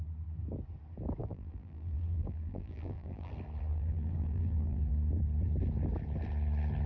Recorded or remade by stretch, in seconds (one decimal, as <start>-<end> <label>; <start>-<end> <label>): 0.0-1.2 recorded; 1.2-3.3 remade; 3.3-3.7 recorded; 3.7-4.8 remade; 4.8-6.9 recorded